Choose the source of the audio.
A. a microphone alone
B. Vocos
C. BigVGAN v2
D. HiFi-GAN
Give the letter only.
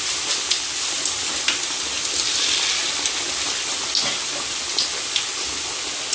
A